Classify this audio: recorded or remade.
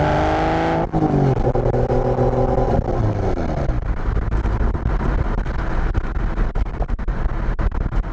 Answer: recorded